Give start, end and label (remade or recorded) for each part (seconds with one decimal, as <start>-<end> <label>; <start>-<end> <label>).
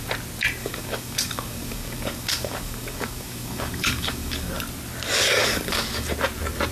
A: 0.0-0.6 recorded; 0.6-4.6 remade; 4.6-5.4 recorded; 5.4-6.1 remade; 6.1-6.7 recorded